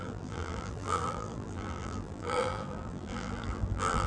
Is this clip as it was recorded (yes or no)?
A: no